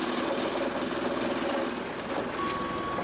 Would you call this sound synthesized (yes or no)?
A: no